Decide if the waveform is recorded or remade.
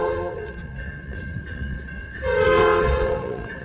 remade